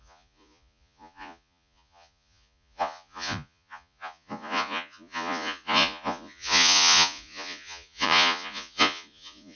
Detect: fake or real fake